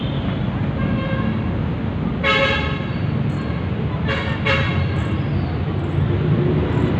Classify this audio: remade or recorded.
recorded